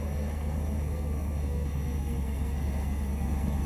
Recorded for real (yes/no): no